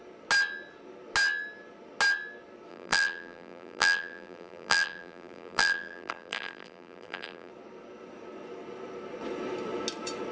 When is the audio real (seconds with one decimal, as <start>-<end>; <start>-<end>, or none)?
0.0-2.7; 7.5-10.3